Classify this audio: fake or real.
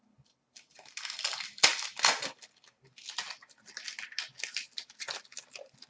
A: real